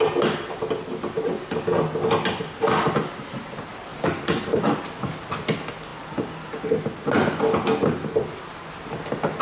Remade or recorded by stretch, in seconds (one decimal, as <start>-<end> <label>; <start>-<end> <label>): 0.0-3.9 recorded; 3.9-4.6 remade; 4.6-9.4 recorded